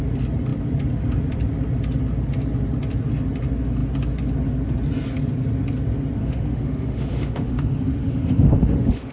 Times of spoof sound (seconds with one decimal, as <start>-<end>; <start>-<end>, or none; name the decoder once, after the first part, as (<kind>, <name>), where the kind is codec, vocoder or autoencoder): 6.2-9.1 (autoencoder, DAC-VAE)